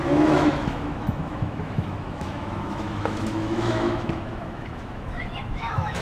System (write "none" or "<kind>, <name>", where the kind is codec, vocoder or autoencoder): autoencoder, DAC-VAE